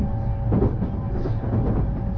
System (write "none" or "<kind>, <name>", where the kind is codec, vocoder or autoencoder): none